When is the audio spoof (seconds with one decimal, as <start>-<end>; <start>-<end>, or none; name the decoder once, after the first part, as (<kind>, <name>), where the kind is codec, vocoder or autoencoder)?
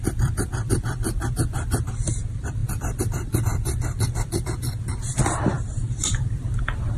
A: 0.0-7.0 (vocoder, BigVGAN v2)